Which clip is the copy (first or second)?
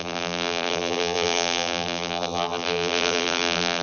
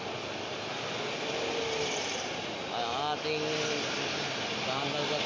first